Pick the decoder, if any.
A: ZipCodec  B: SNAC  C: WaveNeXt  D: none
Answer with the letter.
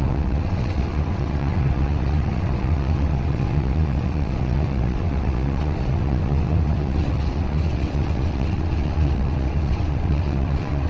C